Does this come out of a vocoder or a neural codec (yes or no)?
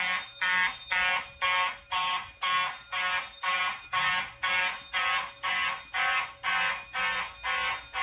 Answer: no